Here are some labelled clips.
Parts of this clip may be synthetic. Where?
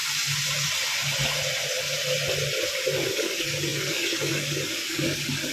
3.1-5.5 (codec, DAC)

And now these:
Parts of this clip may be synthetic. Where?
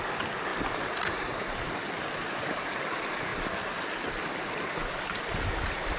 none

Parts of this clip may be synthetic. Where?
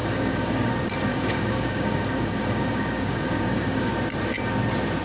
0.0-0.7 (codec, DAC); 1.1-3.9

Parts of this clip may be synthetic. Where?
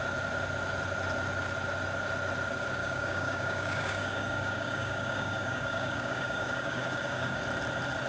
2.8-7.4 (codec, DAC)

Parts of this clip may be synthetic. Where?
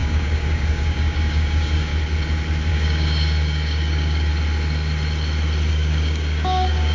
0.0-1.9 (codec, DAC); 2.7-4.3; 5.7-6.9